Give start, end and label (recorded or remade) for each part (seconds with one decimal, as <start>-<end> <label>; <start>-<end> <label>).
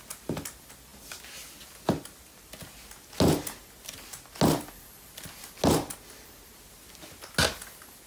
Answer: 0.0-8.1 recorded